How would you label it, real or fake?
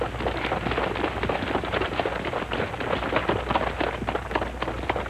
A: real